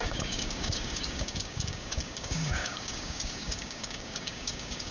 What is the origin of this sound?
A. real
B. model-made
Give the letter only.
B